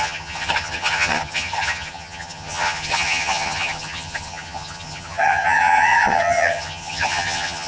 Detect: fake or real fake